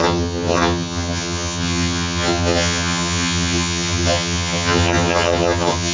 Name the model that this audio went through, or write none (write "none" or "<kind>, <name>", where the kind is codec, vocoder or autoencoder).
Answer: vocoder, HiFi-GAN